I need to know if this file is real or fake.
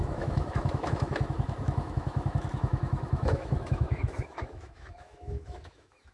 fake